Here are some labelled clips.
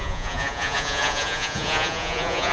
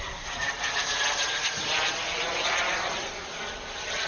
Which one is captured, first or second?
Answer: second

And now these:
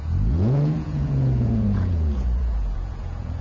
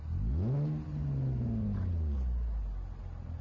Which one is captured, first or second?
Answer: second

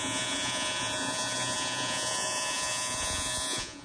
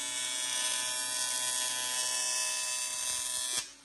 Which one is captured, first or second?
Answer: second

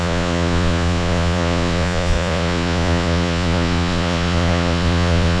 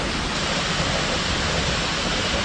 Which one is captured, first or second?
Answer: second